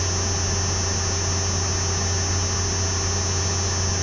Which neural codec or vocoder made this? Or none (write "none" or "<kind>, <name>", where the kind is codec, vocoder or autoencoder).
none